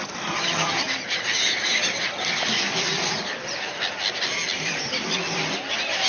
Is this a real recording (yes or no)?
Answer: yes